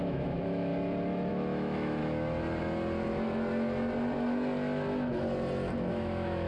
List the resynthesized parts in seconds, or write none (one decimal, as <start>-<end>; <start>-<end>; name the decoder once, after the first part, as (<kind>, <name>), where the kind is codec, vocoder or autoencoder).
0.0-0.7 (autoencoder, DAC-VAE); 1.3-2.0; 5.9-6.5